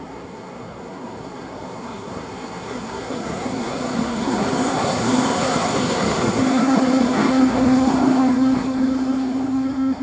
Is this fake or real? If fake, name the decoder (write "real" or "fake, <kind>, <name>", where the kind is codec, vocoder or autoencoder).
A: fake, codec, SNAC